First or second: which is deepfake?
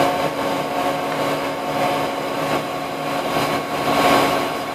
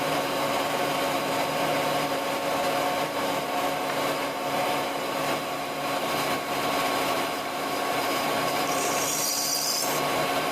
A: second